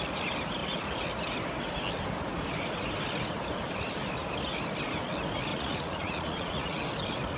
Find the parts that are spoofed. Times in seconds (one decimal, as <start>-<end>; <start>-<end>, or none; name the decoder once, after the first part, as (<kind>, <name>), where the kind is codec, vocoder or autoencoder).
5.5-6.8 (vocoder, Vocos)